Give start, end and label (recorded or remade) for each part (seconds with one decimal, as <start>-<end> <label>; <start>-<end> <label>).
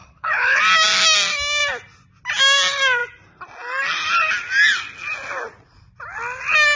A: 0.0-0.6 remade; 0.6-6.8 recorded